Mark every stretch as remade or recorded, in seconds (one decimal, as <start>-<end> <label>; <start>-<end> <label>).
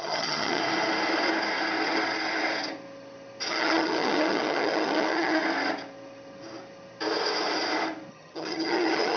0.0-0.6 remade; 0.6-3.5 recorded; 3.5-5.4 remade; 5.4-8.1 recorded; 8.1-9.2 remade